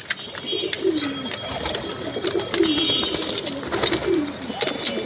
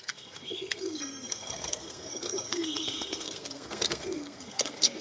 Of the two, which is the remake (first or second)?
second